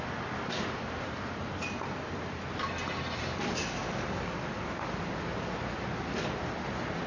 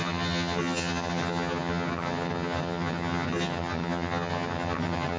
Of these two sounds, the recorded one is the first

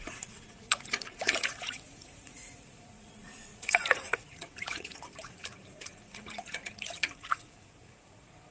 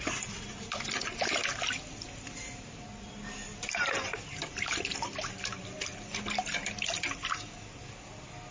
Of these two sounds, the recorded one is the second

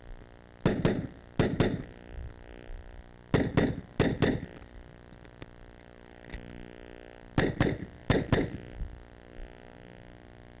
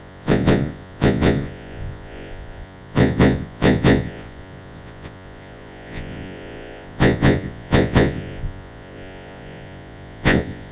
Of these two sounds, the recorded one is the first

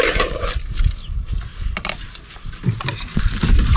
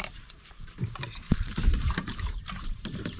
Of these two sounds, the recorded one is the first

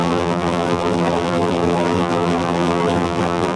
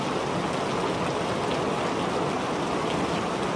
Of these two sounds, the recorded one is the second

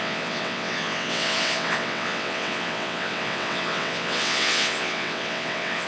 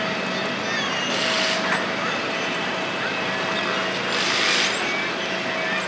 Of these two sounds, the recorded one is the second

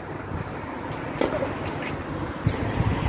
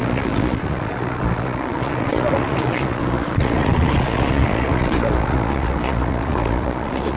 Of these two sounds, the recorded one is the first